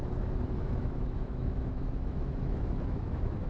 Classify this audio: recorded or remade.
remade